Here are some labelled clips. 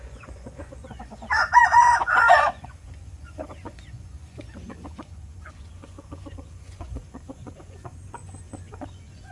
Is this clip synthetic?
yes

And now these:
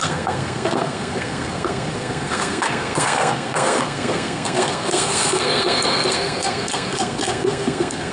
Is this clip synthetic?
yes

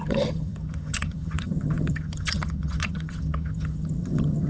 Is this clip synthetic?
yes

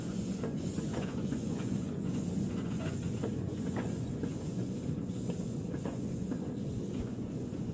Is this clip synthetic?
yes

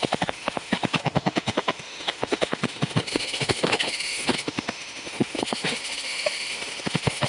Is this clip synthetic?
yes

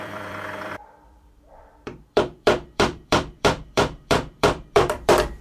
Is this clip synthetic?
yes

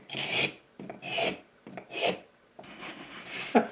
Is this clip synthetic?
yes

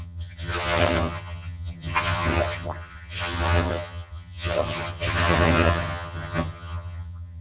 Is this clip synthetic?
yes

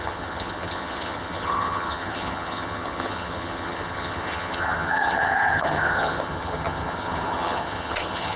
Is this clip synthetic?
yes